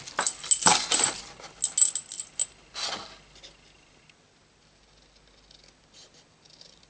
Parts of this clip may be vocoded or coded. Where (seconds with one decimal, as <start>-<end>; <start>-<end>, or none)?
none